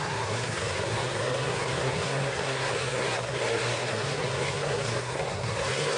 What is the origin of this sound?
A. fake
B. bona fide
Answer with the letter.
A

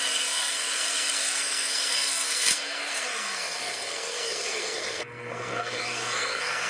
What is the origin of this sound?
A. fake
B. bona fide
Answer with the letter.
A